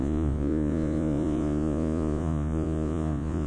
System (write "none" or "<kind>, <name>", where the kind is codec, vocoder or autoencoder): vocoder, Vocos